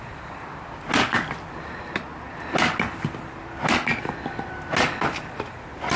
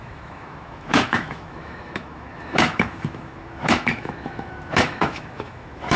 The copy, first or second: second